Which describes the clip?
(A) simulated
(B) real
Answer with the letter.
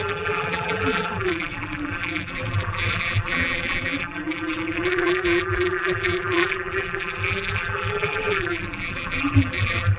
A